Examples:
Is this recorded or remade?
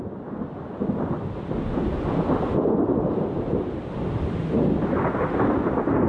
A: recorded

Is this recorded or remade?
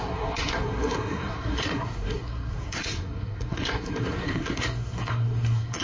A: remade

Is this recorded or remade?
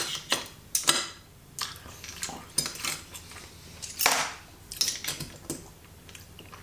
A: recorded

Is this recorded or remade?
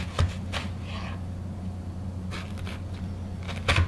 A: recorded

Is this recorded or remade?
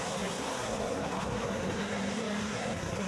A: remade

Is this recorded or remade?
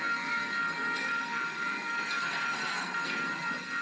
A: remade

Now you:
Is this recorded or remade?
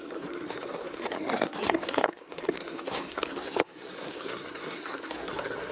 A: remade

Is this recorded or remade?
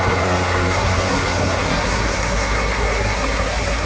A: remade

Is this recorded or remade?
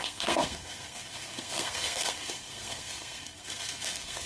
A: remade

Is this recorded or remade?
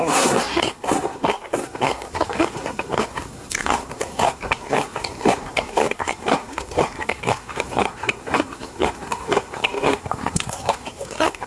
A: remade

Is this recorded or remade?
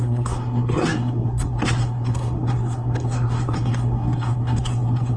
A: remade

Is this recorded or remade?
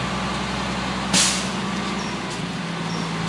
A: recorded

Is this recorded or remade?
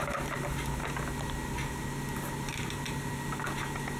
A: recorded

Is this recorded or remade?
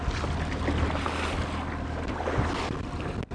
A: recorded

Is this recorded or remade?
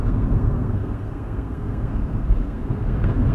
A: remade